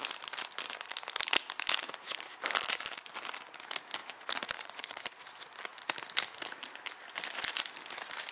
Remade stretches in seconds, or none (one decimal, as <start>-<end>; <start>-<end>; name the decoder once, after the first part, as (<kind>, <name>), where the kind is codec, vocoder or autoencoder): 4.0-5.0 (vocoder, Vocos)